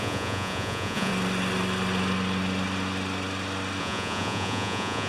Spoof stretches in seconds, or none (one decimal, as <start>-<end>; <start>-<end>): 0.0-1.1; 3.8-5.1